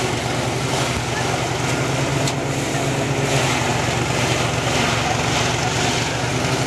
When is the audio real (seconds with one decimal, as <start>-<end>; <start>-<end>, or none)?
0.0-6.7